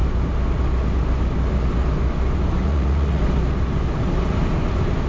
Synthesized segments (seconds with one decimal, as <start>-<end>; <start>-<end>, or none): 2.6-3.2